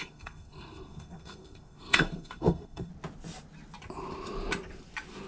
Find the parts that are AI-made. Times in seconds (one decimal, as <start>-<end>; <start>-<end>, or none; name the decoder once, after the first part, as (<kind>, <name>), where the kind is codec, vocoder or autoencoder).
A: 0.0-2.9 (codec, SNAC)